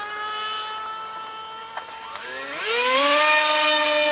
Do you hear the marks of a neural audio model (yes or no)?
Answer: no